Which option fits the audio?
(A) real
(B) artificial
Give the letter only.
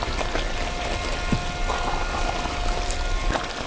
A